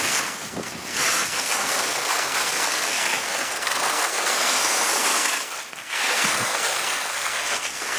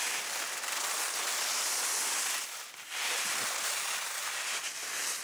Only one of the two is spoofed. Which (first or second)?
first